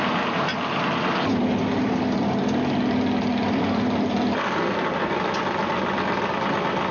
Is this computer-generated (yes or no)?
no